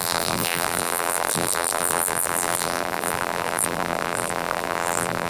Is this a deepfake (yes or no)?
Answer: yes